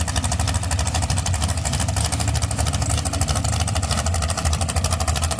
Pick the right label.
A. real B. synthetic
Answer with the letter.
A